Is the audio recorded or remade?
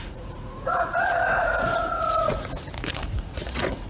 remade